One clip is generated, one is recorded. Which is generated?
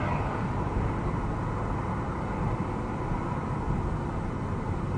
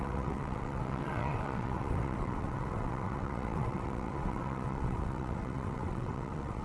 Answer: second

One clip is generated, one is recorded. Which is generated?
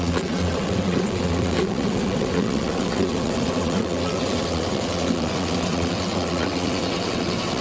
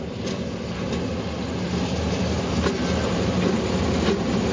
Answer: first